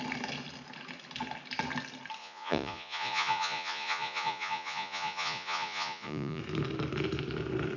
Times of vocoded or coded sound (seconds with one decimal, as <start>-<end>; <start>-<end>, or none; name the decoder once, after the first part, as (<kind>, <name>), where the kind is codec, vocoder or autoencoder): 2.2-6.4 (vocoder, Vocos)

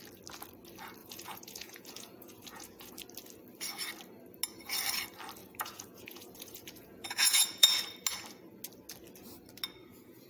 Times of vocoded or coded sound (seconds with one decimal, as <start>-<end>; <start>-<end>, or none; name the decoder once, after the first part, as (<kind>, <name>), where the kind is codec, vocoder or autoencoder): 1.0-2.9 (vocoder, Vocos); 5.4-7.8; 9.8-10.3

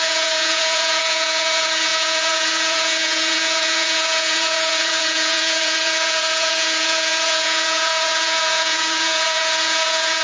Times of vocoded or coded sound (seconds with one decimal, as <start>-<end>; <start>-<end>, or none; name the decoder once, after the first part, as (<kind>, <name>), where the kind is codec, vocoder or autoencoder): 0.0-10.2 (vocoder, Vocos)